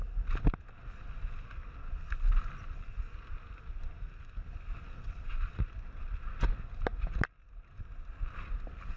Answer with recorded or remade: recorded